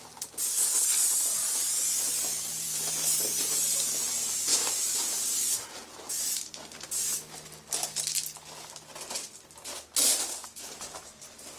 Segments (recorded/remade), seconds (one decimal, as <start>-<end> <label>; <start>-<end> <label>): 0.0-4.5 recorded; 4.5-5.7 remade; 5.7-10.4 recorded; 10.4-11.6 remade